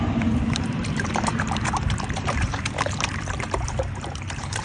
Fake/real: fake